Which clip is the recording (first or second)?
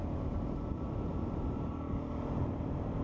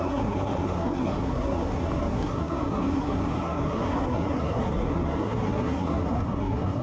first